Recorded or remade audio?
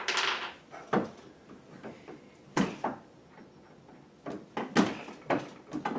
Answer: recorded